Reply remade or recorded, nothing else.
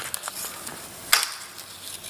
recorded